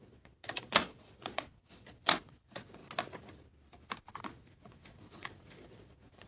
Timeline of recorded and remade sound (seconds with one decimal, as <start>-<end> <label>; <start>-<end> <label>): 0.0-2.8 remade; 2.8-4.2 recorded; 4.2-6.3 remade